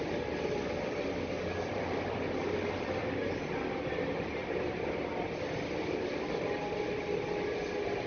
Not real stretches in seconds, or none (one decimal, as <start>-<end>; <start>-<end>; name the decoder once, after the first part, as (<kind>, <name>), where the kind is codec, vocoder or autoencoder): none

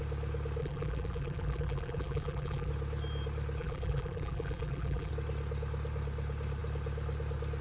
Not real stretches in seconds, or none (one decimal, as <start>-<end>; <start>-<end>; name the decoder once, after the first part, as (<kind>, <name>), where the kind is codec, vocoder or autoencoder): 0.6-2.7 (vocoder, BigVGAN v2); 3.6-5.1

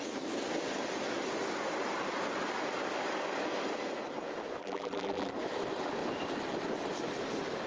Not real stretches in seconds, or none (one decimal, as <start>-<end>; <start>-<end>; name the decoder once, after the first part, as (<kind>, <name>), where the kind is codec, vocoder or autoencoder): 4.6-5.3 (vocoder, BigVGAN v2)